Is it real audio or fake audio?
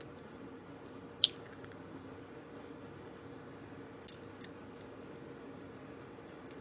real